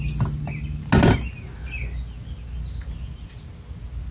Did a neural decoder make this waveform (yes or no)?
no